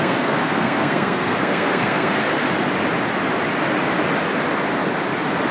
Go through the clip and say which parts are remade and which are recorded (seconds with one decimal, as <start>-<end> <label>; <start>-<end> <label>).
0.0-2.2 remade; 2.2-5.5 recorded